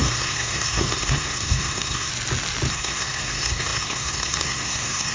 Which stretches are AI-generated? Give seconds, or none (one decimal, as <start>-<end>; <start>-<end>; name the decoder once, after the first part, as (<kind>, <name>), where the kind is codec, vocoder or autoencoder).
0.0-2.1 (codec, SNAC); 2.7-5.1